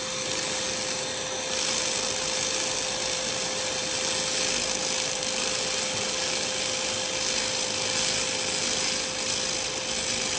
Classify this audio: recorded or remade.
recorded